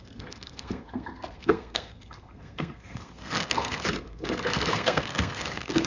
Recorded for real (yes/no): no